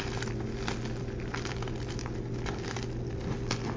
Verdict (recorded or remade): recorded